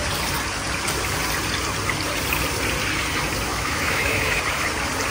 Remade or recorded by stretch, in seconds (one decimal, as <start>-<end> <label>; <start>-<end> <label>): 0.0-3.5 recorded; 3.5-4.4 remade; 4.4-5.1 recorded